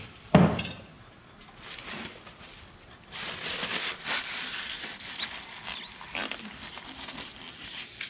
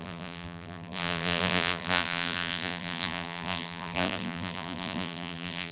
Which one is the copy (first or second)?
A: second